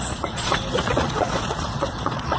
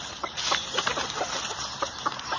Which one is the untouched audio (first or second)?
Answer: second